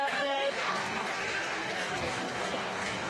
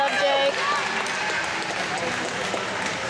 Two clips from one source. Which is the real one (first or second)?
second